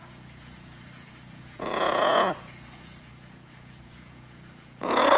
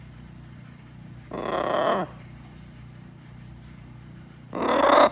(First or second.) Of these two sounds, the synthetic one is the first